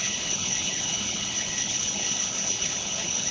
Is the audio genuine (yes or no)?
no